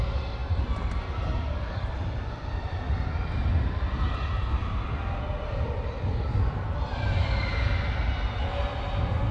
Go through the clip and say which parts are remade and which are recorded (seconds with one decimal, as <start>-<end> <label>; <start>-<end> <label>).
0.0-9.3 recorded